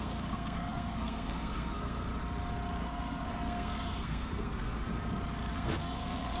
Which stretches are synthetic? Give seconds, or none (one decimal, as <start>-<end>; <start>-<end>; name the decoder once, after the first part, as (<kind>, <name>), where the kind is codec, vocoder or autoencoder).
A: 0.0-2.1 (codec, SNAC); 2.8-4.9; 5.5-6.4